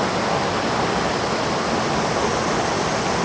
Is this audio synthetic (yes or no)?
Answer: no